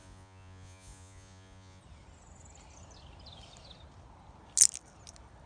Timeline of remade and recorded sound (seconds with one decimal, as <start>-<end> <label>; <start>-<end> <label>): 0.0-1.8 remade; 1.8-5.5 recorded